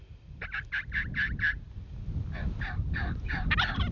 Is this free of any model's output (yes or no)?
yes